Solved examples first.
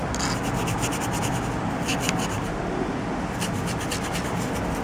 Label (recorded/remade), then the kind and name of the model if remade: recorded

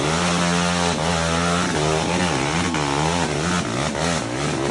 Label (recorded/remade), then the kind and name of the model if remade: recorded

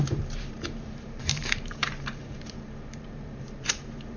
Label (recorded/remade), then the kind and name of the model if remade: remade, vocoder, BigVGAN v2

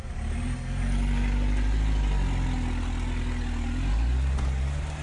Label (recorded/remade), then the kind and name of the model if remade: recorded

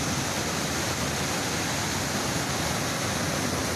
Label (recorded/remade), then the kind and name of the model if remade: recorded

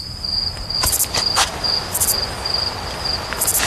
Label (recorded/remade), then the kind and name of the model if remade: recorded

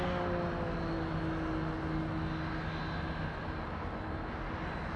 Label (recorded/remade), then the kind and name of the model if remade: recorded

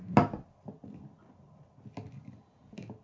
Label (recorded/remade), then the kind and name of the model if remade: recorded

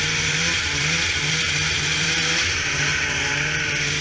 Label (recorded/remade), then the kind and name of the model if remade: remade, vocoder, BigVGAN v2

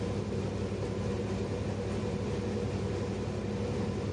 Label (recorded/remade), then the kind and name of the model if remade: recorded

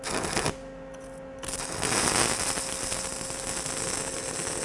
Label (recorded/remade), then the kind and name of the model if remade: recorded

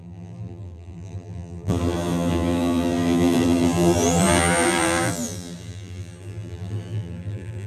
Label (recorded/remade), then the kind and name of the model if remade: remade, vocoder, BigVGAN v2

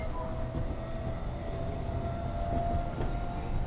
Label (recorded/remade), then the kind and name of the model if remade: recorded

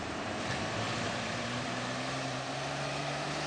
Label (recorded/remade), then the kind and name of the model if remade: remade, vocoder, BigVGAN v2